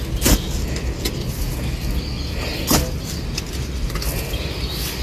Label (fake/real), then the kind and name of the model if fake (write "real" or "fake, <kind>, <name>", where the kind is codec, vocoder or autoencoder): real